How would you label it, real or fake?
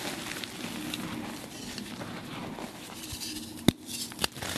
real